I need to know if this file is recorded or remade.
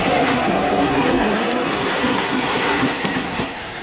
remade